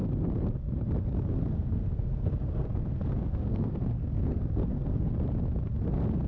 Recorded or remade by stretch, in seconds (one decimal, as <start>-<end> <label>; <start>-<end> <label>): 0.0-1.3 recorded; 1.3-5.1 remade; 5.1-6.3 recorded

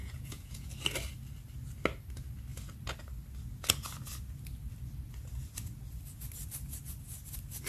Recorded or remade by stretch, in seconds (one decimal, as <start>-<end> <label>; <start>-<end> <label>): 0.0-0.7 remade; 0.7-7.7 recorded

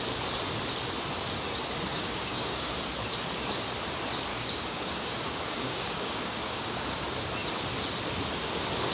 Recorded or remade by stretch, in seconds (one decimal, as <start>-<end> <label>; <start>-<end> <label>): 0.0-1.9 recorded; 1.9-2.7 remade; 2.7-4.3 recorded; 4.3-6.8 remade; 6.8-8.9 recorded

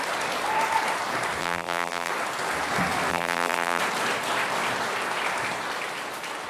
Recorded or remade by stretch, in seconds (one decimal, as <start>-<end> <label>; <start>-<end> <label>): 0.0-1.4 recorded; 1.4-2.1 remade; 2.1-3.1 recorded; 3.1-3.8 remade; 3.8-6.5 recorded

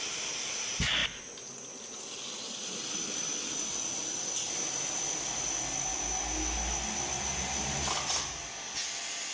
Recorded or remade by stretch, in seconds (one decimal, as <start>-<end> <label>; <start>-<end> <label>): 0.0-9.3 recorded

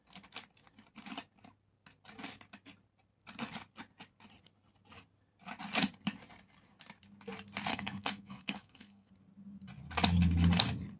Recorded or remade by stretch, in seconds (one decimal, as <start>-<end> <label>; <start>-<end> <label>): 0.0-7.7 recorded; 7.7-9.1 remade; 9.1-11.0 recorded